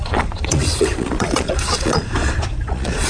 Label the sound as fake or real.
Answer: fake